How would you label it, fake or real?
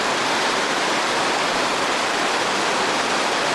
real